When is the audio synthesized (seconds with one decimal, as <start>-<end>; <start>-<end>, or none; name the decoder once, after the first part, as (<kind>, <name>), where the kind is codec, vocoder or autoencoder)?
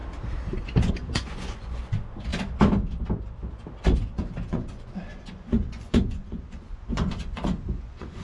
0.9-2.3 (vocoder, Vocos); 3.8-8.2